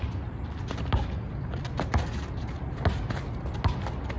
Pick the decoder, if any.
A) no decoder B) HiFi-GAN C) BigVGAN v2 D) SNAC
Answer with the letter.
A